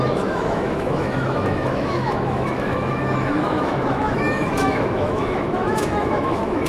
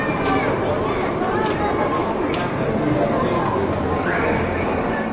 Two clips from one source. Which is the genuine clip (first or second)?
second